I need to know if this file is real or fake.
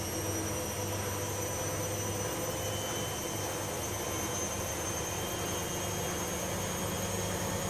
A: real